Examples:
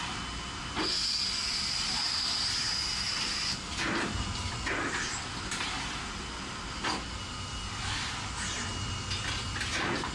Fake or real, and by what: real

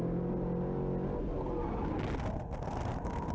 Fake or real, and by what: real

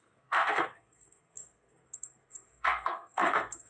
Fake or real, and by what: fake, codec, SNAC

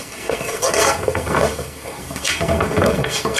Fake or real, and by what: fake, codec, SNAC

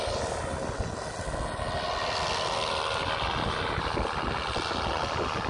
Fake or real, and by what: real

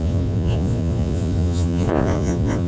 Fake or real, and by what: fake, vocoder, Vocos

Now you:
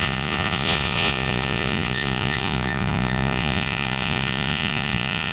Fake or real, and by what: fake, vocoder, Vocos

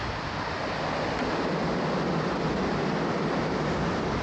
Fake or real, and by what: real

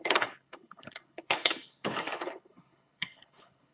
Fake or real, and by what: fake, codec, HILCodec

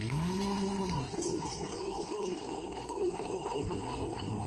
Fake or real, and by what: fake, codec, SNAC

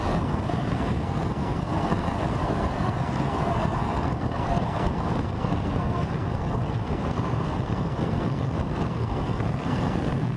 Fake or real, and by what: fake, codec, SNAC